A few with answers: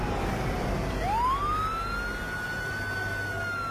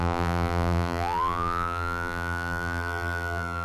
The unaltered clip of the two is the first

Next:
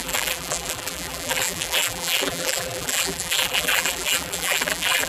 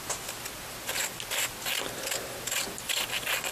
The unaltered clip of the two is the second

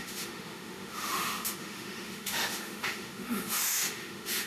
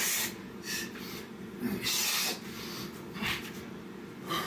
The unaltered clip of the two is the second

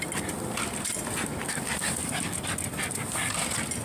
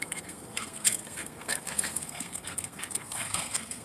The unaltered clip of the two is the first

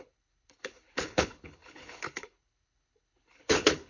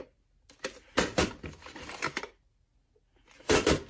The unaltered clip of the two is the second